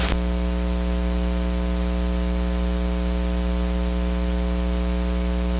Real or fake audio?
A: real